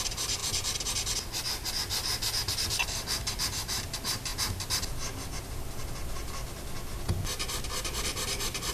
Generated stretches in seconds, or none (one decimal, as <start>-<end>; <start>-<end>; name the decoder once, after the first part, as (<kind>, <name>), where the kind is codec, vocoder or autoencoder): 0.0-0.4 (vocoder, BigVGAN v2); 1.7-4.3; 7.6-8.7